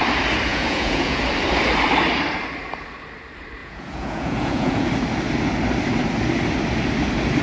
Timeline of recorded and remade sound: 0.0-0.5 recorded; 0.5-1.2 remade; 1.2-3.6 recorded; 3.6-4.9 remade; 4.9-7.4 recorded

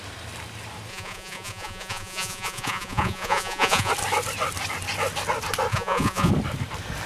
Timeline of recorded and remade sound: 0.0-0.9 recorded; 0.9-3.9 remade; 3.9-5.7 recorded; 5.7-6.3 remade; 6.3-7.1 recorded